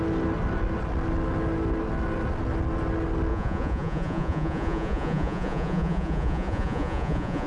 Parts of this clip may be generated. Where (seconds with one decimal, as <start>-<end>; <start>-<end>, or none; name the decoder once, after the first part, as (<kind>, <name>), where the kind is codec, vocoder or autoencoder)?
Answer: 3.3-7.5 (vocoder, Vocos)